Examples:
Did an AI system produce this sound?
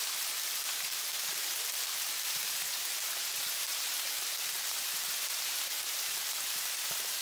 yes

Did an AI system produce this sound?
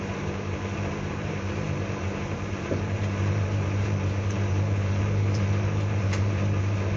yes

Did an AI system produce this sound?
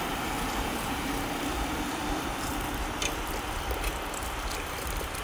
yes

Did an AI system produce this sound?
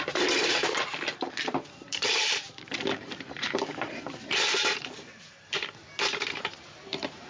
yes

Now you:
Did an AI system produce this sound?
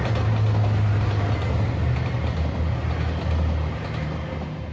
no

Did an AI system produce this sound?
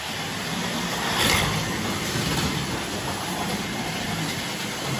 no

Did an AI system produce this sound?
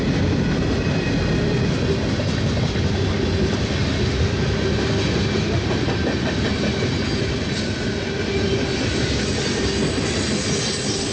no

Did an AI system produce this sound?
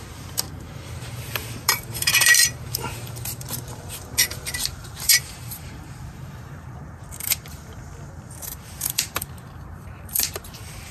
yes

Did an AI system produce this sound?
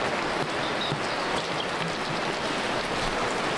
no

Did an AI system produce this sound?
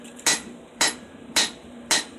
yes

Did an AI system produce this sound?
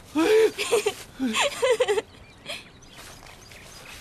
no